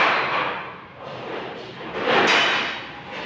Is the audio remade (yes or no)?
no